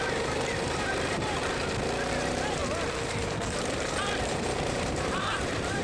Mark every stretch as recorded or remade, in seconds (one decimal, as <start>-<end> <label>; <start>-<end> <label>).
0.0-1.4 remade; 1.4-2.1 recorded; 2.1-2.6 remade; 2.6-4.3 recorded; 4.3-5.8 remade